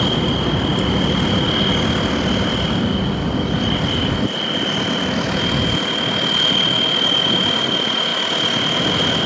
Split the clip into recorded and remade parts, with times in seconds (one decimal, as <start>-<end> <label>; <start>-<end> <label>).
0.0-9.3 recorded